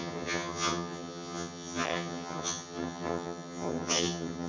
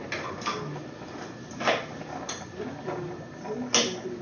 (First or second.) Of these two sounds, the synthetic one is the first